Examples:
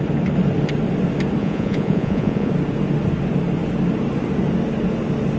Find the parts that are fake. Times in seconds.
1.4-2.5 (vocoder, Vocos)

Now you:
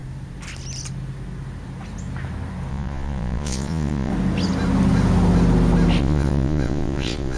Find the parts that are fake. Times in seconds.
2.7-4.1 (vocoder, Vocos); 6.0-7.4

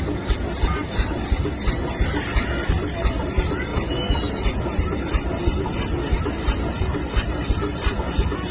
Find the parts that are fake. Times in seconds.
none

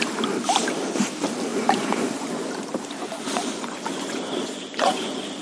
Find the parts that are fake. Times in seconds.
1.5-2.5 (vocoder, Vocos); 3.0-5.4

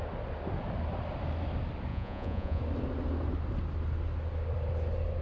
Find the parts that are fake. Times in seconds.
1.9-2.6 (vocoder, Vocos)

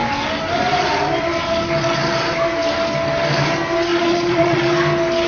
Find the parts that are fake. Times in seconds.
3.9-4.6 (vocoder, Vocos)

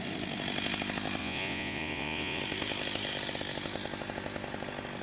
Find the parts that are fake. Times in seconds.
1.2-2.4 (vocoder, Vocos)

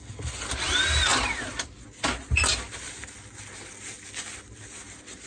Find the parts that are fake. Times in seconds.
none